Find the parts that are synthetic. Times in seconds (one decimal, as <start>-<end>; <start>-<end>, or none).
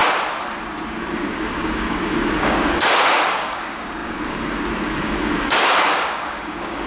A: 1.1-6.9